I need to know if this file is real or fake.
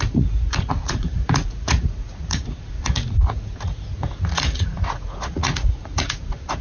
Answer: fake